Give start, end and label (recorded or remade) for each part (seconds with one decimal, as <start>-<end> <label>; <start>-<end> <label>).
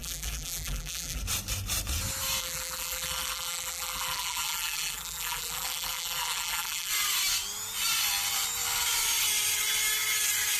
0.0-1.2 remade; 1.2-2.4 recorded; 2.4-6.9 remade; 6.9-10.6 recorded